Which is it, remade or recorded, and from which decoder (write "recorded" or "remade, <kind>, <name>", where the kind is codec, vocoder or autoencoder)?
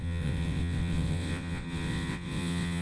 remade, vocoder, WaveNeXt